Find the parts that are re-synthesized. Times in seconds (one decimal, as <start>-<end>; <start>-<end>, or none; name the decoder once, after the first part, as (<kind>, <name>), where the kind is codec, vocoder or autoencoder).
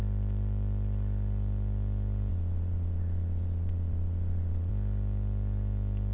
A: 2.3-4.7 (vocoder, Vocos)